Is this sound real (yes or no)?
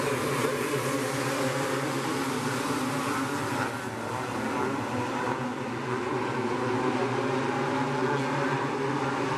yes